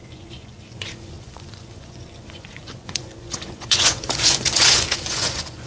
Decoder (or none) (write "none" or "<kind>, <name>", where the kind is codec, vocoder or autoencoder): vocoder, Vocos